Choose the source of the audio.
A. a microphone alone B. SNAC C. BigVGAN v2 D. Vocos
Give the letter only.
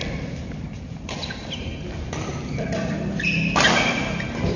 A